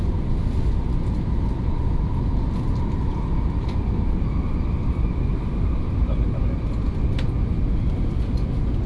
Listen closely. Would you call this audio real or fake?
real